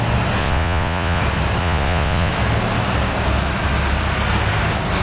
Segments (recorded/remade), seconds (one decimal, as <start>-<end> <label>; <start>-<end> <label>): 0.0-0.4 recorded; 0.4-1.2 remade; 1.2-1.6 recorded; 1.6-2.3 remade; 2.3-5.0 recorded